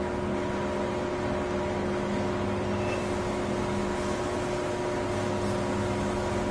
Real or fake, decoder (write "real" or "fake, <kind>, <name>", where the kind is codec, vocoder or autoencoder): real